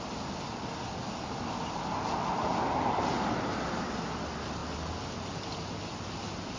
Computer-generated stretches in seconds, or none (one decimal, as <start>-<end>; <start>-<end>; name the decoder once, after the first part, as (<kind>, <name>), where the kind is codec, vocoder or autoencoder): none